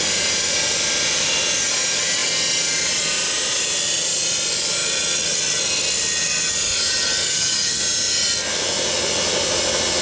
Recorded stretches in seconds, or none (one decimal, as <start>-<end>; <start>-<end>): 0.0-7.3; 7.8-10.0